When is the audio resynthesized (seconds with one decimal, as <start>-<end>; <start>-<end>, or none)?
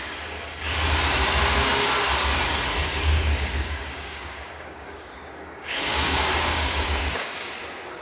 2.9-7.5